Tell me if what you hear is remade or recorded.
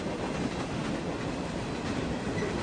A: recorded